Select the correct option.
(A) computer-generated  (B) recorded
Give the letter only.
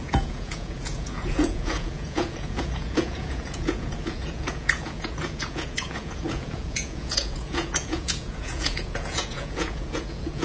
A